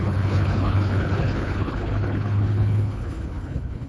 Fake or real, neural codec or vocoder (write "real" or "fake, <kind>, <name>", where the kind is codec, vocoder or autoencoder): fake, codec, HILCodec